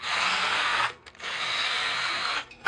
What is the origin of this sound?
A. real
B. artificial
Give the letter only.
B